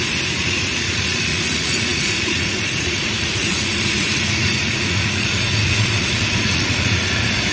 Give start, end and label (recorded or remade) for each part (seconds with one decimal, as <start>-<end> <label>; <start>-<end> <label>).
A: 0.0-7.5 remade